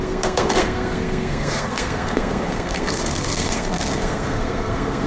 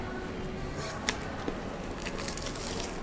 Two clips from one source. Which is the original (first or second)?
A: second